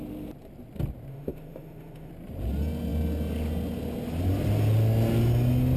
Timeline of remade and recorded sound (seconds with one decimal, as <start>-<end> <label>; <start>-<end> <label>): 0.0-1.1 recorded; 1.1-2.1 remade; 2.1-5.8 recorded